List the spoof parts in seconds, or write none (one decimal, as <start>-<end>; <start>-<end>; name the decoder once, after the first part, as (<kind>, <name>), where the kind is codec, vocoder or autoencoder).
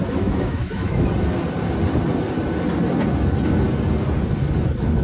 0.0-1.1 (autoencoder, DAC-VAE)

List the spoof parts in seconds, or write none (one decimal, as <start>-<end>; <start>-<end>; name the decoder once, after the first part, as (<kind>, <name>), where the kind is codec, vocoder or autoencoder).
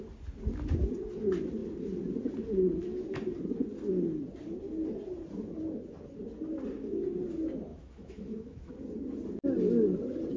7.7-8.7 (autoencoder, DAC-VAE)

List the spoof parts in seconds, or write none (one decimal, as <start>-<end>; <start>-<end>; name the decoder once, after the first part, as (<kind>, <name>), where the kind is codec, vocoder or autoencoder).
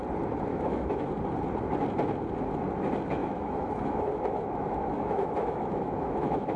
0.5-1.1 (autoencoder, DAC-VAE); 3.2-6.6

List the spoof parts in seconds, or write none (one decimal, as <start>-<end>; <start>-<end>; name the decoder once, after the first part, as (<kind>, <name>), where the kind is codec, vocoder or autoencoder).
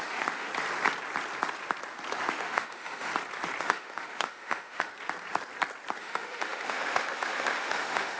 0.0-0.5 (autoencoder, DAC-VAE); 2.3-3.1; 3.6-4.9; 6.0-8.2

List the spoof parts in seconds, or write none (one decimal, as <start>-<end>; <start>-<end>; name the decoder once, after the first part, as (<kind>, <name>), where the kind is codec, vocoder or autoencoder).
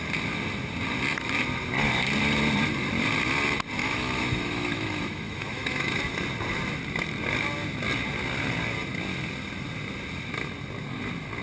3.8-6.0 (autoencoder, DAC-VAE)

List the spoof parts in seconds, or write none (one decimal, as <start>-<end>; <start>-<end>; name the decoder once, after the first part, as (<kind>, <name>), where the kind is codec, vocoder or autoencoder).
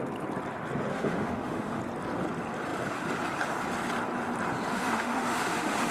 0.9-1.8 (autoencoder, DAC-VAE); 4.7-5.9